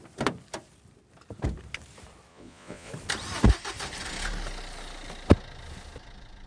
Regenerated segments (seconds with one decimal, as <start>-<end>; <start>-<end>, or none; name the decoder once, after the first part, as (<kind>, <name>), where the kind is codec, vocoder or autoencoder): 2.3-2.9 (vocoder, Vocos)